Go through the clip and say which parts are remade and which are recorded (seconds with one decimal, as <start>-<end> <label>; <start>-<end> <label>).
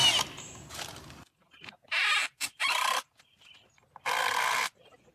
0.0-5.1 recorded